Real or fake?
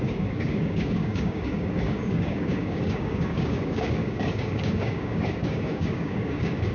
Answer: fake